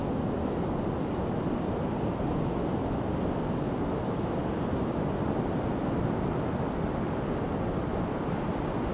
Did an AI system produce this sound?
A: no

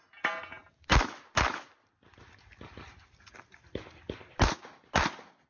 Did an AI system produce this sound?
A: no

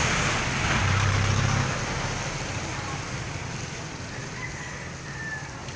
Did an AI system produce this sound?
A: no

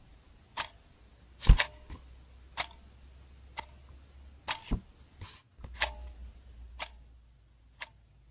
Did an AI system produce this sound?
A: no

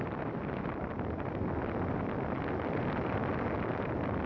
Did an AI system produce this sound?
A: no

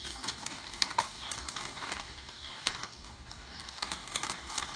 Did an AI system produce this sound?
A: yes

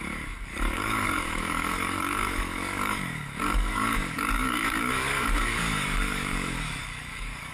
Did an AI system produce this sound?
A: yes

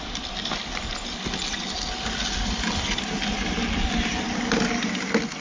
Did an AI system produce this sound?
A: no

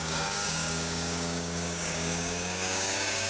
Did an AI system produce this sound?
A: yes